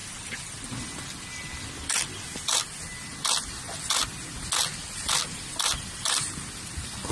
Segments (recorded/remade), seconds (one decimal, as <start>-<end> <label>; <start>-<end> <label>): 0.0-0.6 remade; 0.6-5.2 recorded; 5.2-6.2 remade; 6.2-7.1 recorded